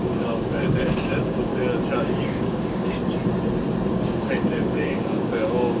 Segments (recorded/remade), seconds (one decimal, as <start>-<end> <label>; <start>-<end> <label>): 0.0-1.5 remade; 1.5-2.0 recorded; 2.0-3.0 remade; 3.0-3.9 recorded; 3.9-5.8 remade